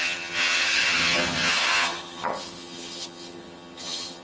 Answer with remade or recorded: remade